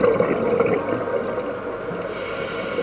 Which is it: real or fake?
real